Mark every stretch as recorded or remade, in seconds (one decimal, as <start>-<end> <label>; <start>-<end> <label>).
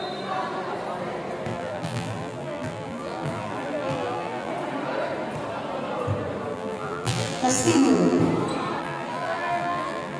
0.0-1.5 recorded; 1.5-4.5 remade; 4.5-6.5 recorded; 6.5-8.2 remade; 8.2-8.8 recorded; 8.8-10.2 remade